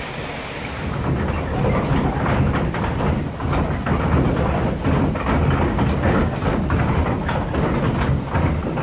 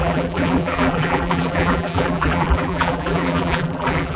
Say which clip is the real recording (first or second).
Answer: first